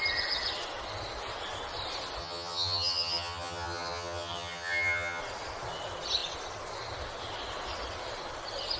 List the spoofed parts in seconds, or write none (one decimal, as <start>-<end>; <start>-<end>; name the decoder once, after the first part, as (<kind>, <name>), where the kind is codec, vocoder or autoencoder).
2.2-5.2 (vocoder, HiFi-GAN)

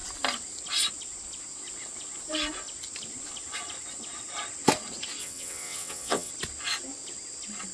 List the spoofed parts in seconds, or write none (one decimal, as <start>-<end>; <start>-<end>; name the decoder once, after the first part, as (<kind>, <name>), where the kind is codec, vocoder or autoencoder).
5.2-6.3 (vocoder, WaveNeXt)

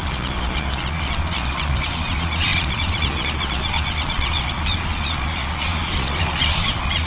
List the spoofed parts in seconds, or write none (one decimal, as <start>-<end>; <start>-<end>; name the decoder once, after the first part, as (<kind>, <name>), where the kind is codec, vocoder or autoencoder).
0.0-7.1 (vocoder, Vocos)

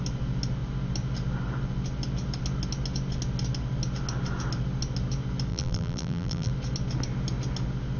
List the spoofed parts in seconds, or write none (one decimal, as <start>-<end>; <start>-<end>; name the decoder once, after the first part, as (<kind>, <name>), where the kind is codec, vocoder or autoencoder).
5.5-6.5 (vocoder, BigVGAN v2)

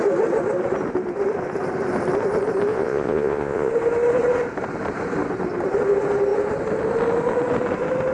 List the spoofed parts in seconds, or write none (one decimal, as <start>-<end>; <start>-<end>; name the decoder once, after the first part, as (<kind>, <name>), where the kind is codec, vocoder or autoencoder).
2.7-3.7 (vocoder, Vocos)

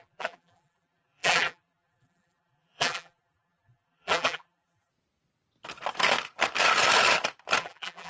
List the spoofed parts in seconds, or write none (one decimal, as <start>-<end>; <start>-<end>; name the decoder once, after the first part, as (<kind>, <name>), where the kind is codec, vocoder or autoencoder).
0.0-4.9 (vocoder, BigVGAN v2); 7.6-8.1

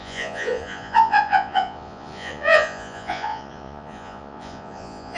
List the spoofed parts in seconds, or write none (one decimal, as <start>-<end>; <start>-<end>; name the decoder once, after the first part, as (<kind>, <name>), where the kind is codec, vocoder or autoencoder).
0.0-5.2 (vocoder, Vocos)